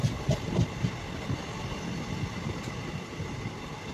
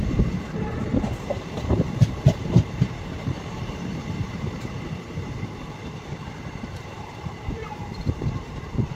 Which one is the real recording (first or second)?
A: first